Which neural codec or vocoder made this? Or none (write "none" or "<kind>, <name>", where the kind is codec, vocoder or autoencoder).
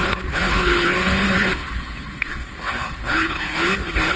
codec, HILCodec